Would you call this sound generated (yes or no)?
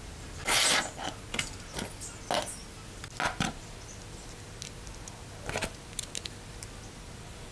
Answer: no